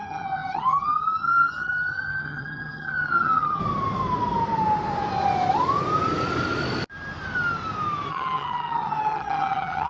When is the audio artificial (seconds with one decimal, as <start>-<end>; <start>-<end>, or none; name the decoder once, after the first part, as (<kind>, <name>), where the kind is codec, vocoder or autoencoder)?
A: 0.0-3.6 (vocoder, HiFi-GAN); 8.1-9.9